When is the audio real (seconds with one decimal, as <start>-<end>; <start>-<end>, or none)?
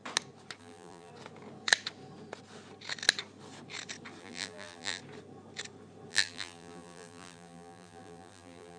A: 0.0-0.6; 1.1-4.2; 5.0-6.1